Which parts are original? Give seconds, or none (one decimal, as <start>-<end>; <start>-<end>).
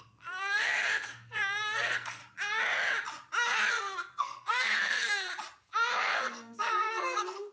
2.2-3.7; 5.3-6.1